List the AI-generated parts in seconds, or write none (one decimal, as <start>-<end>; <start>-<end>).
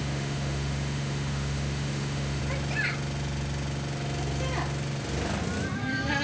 0.0-2.4